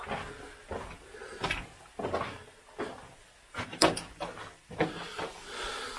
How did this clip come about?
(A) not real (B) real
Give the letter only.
B